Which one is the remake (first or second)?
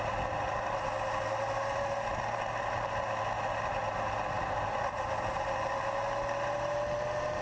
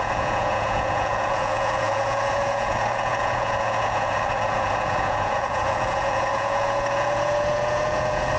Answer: second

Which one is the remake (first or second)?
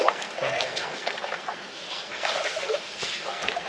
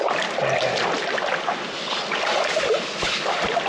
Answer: first